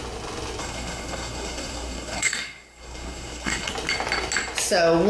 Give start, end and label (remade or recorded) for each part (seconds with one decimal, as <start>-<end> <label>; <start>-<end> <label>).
0.0-0.6 recorded; 0.6-3.7 remade; 3.7-5.1 recorded